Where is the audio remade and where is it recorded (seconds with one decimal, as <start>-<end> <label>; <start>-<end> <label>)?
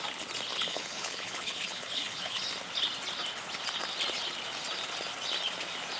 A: 0.0-0.5 recorded; 0.5-2.4 remade; 2.4-6.0 recorded